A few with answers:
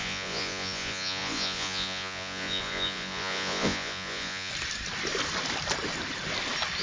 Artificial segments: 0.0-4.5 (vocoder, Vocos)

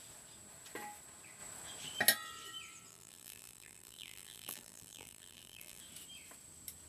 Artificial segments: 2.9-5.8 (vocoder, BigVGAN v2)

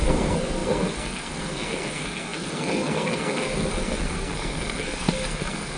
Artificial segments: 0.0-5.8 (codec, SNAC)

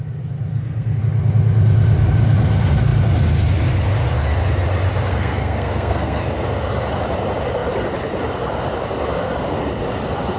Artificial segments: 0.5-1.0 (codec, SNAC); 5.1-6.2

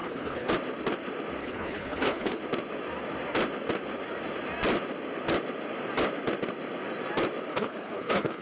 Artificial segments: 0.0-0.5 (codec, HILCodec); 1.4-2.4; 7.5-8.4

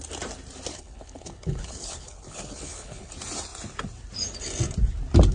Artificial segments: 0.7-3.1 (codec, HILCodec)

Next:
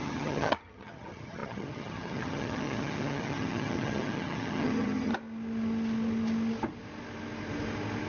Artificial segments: 0.0-5.1 (vocoder, HiFi-GAN)